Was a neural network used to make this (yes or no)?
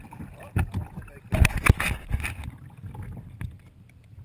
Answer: no